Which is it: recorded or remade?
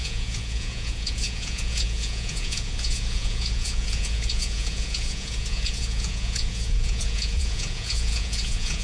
remade